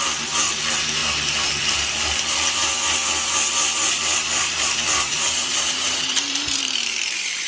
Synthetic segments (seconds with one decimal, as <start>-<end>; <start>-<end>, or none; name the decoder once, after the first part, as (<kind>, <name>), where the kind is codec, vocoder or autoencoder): 0.0-7.5 (vocoder, BigVGAN v2)